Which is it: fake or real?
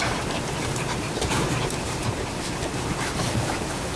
fake